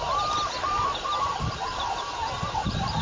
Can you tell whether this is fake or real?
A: fake